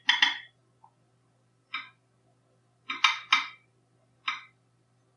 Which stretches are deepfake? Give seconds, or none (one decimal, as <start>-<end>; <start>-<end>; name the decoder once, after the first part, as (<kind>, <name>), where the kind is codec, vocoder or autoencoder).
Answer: none